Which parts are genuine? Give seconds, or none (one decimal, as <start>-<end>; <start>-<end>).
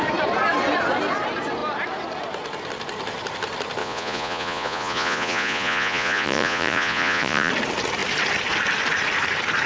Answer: 0.0-3.8; 7.5-9.7